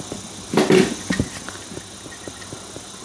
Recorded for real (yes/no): yes